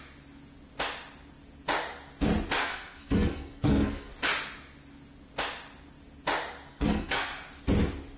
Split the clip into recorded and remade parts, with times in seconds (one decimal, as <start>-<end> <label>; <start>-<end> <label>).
0.0-2.6 recorded; 2.6-4.1 remade; 4.1-6.7 recorded; 6.7-7.3 remade; 7.3-8.2 recorded